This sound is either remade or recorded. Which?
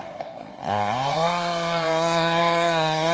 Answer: remade